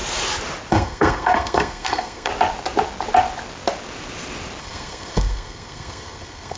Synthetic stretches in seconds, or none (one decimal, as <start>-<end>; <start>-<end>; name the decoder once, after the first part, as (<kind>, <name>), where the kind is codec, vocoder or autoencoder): 0.7-2.3 (codec, SNAC); 4.6-6.6